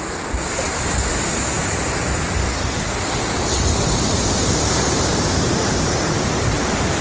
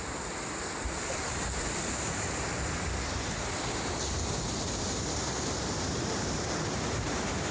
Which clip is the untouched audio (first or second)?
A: first